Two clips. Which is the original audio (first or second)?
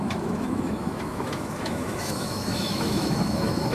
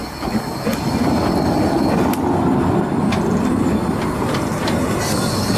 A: second